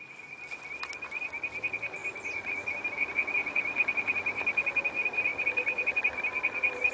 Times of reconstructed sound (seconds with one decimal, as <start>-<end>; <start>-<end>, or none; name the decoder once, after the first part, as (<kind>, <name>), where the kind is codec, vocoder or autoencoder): 2.0-4.8 (vocoder, BigVGAN v2); 5.3-6.0